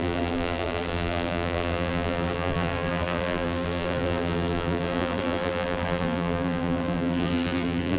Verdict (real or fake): fake